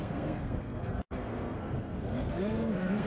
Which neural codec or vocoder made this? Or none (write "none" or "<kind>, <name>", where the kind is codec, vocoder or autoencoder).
codec, SNAC